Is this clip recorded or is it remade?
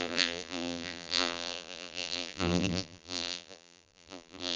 remade